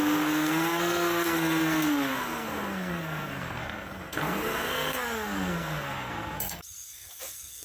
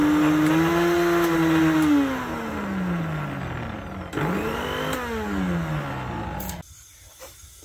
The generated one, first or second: first